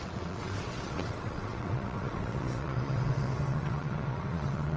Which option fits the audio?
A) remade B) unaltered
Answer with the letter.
A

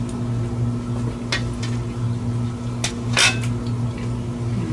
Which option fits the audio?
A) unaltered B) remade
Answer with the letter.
A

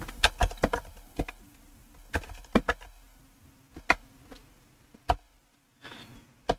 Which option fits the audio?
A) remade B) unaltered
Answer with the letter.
B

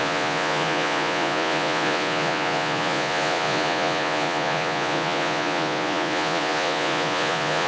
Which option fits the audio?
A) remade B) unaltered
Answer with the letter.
A